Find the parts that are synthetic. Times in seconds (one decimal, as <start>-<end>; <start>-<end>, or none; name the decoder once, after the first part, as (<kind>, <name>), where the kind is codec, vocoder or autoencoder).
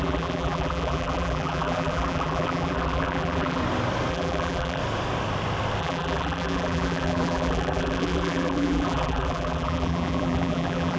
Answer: 0.0-3.6 (vocoder, BigVGAN v2); 4.1-4.8; 5.8-11.0